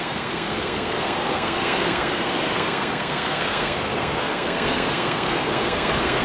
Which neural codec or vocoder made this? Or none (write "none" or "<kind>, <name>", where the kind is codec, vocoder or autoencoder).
codec, SNAC